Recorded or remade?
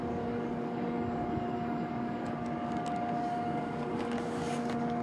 remade